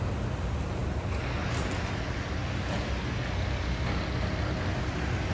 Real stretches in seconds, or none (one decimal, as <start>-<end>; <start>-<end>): 0.0-5.3